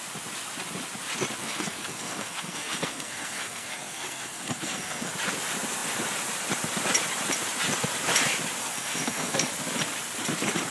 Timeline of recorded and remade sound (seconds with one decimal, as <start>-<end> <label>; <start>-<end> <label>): 0.0-1.4 recorded; 1.4-5.1 remade; 5.1-8.6 recorded; 8.6-9.5 remade; 9.5-10.7 recorded

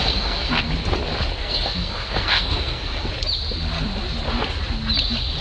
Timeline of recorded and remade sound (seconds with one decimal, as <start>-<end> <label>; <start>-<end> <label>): 0.0-0.7 remade; 0.7-1.4 recorded; 1.4-3.1 remade; 3.1-5.4 recorded